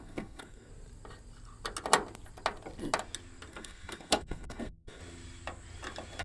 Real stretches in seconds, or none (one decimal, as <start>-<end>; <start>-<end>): 0.7-3.5; 5.0-6.2